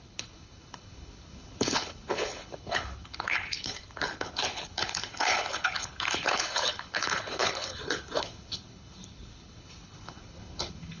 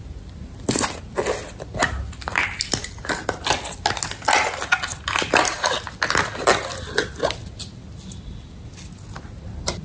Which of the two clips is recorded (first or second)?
second